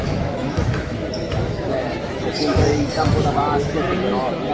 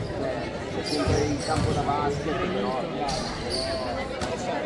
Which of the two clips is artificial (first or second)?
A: first